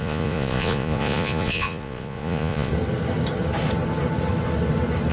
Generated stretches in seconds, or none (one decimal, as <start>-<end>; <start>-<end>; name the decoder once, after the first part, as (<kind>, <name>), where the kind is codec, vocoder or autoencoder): 0.0-2.7 (vocoder, Vocos)